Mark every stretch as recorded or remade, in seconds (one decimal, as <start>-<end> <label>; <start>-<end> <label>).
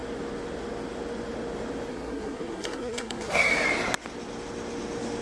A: 0.0-1.9 recorded; 1.9-3.5 remade; 3.5-5.2 recorded